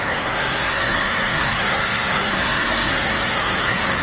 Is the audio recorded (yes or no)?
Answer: no